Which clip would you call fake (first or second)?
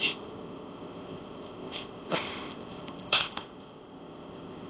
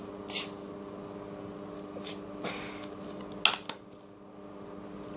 first